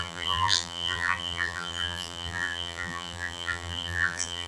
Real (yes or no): no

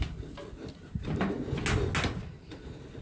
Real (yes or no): yes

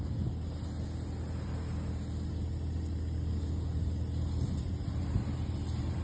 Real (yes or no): yes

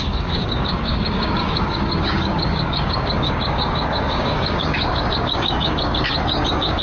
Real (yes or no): no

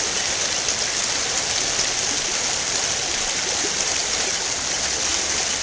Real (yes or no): yes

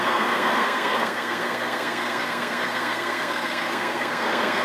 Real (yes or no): no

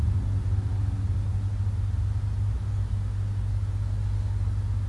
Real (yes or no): yes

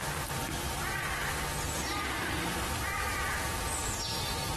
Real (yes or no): yes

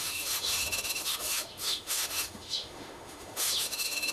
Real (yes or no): no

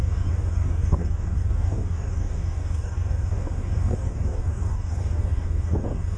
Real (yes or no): no